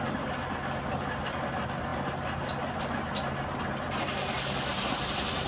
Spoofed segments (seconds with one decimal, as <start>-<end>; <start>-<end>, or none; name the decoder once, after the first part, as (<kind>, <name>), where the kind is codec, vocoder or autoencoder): none